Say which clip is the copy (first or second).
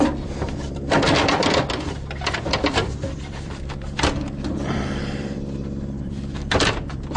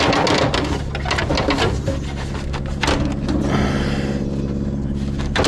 first